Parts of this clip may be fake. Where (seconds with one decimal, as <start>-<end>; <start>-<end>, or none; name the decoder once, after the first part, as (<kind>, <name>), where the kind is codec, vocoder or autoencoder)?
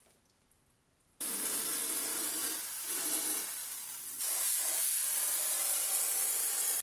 1.1-1.7 (vocoder, BigVGAN v2); 2.1-2.9